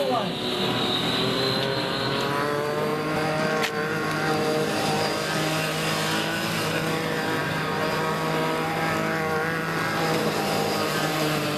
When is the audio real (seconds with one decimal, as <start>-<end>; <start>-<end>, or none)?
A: 0.0-7.4; 8.0-10.2